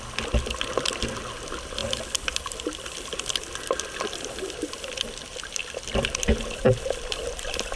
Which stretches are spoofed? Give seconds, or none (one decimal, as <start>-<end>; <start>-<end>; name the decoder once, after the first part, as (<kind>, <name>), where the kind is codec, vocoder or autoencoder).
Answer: none

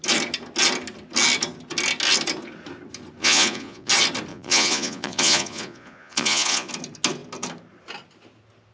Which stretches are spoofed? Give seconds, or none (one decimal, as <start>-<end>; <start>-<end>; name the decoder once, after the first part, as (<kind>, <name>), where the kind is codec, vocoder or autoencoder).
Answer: 3.2-3.9 (vocoder, Vocos); 4.3-6.7

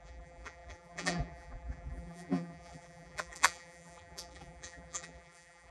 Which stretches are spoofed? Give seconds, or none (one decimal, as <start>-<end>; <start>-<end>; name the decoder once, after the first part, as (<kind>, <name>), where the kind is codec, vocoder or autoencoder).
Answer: 0.0-5.7 (vocoder, BigVGAN v2)

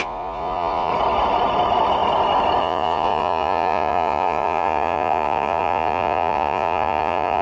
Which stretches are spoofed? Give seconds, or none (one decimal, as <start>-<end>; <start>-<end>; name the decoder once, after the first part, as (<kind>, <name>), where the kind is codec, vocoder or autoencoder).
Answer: 0.0-0.9 (vocoder, Vocos); 2.6-7.4

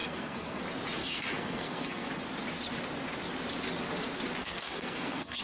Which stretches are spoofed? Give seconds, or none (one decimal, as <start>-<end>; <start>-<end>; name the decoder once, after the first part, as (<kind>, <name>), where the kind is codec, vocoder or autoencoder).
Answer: 0.0-0.6 (codec, SNAC); 1.0-2.1; 4.4-5.4

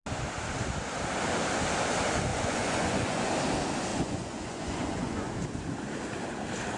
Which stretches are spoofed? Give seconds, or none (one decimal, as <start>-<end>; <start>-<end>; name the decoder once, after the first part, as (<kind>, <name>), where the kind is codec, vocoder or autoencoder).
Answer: 2.3-3.3 (vocoder, Vocos); 3.9-5.3